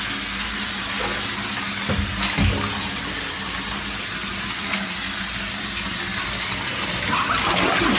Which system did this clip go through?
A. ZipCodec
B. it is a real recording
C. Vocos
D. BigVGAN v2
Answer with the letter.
B